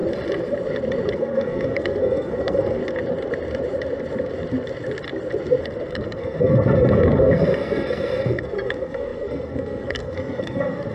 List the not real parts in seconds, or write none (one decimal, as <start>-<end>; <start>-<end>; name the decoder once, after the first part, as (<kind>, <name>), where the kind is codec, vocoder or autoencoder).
1.1-2.8 (codec, SNAC); 5.6-10.9